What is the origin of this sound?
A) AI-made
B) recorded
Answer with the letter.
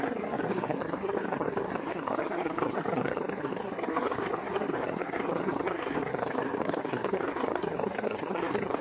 A